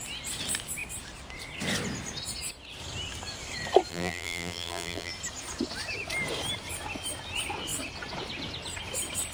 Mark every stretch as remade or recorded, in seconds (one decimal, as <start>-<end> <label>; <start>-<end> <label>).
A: 0.0-3.9 recorded; 3.9-5.1 remade; 5.1-9.3 recorded